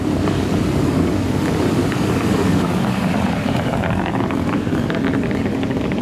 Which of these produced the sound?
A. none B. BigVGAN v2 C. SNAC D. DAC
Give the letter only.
D